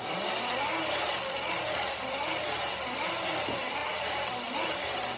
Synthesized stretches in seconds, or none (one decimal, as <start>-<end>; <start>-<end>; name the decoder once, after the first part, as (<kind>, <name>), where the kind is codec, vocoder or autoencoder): none